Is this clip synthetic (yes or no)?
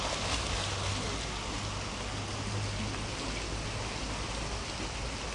no